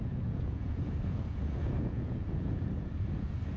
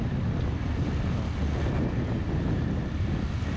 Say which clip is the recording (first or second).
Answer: second